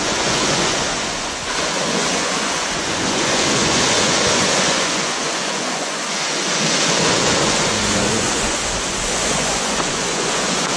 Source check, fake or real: fake